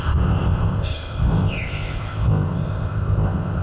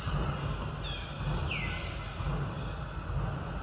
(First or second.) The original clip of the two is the second